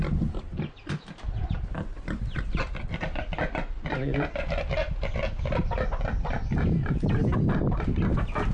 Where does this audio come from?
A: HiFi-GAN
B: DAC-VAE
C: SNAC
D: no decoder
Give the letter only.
D